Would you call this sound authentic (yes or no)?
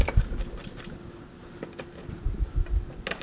yes